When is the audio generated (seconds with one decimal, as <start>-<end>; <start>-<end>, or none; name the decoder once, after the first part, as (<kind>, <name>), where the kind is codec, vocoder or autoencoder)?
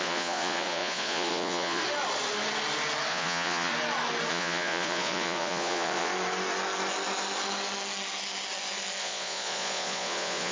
0.0-1.8 (vocoder, Vocos); 3.1-3.7; 4.3-6.1; 9.0-10.5